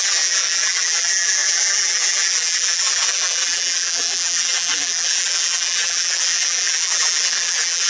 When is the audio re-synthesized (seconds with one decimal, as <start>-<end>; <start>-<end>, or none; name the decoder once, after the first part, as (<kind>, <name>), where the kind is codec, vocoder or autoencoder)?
0.0-7.9 (vocoder, BigVGAN v2)